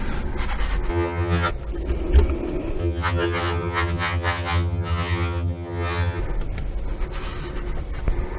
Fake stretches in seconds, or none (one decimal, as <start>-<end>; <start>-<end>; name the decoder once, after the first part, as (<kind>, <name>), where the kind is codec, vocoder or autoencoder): 0.9-1.5 (vocoder, HiFi-GAN); 2.8-6.2